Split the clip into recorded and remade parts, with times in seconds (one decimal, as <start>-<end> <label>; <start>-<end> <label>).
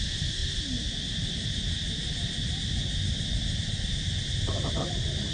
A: 0.0-5.3 recorded